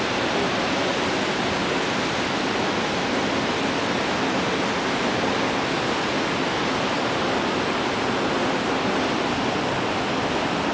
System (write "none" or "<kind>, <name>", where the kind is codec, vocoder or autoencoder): none